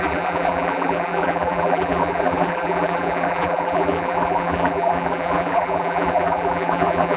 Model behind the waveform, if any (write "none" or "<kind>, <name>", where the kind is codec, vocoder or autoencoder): vocoder, BigVGAN v2